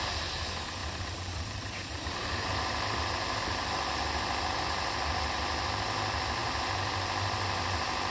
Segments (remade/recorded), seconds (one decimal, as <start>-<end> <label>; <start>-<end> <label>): 0.0-0.8 recorded; 0.8-3.4 remade; 3.4-6.4 recorded; 6.4-6.9 remade; 6.9-8.1 recorded